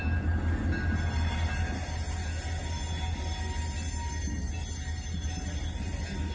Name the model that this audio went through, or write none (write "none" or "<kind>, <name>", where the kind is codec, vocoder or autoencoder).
none